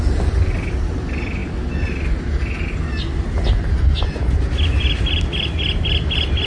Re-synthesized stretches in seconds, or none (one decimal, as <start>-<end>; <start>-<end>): none

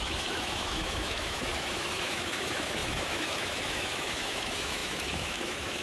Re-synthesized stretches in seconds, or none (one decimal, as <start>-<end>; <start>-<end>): 0.0-5.8

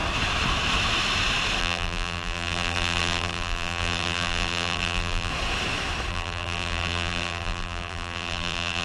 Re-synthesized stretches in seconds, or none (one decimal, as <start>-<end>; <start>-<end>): 1.6-5.3; 6.1-8.8

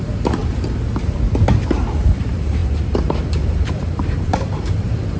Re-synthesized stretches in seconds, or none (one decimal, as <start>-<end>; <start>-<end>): 0.0-0.4; 1.9-5.2

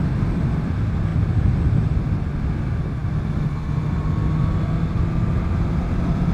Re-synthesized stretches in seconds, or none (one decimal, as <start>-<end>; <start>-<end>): 3.0-4.4

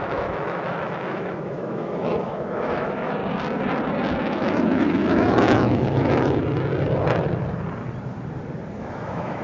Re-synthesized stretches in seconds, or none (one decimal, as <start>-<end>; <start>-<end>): 0.0-3.2; 4.2-6.4; 8.8-9.4